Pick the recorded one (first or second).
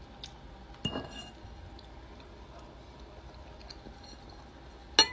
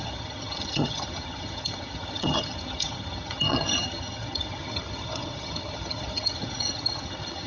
first